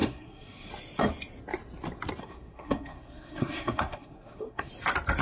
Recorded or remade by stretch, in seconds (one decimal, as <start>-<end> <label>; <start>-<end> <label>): 0.0-0.7 remade; 0.7-2.2 recorded; 2.2-4.7 remade; 4.7-5.2 recorded